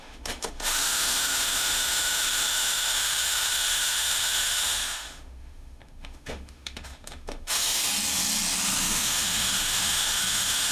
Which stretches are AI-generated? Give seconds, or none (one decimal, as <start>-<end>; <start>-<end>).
0.0-7.9; 8.8-10.7